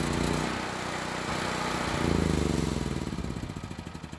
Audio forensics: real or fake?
real